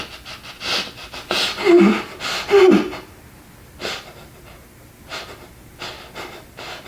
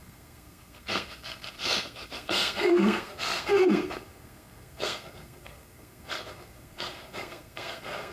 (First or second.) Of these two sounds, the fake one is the second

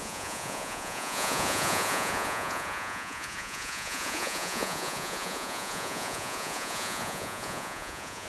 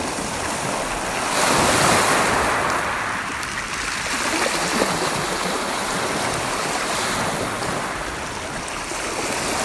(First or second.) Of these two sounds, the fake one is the first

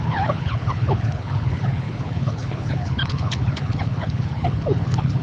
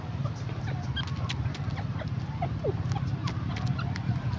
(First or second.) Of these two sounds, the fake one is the first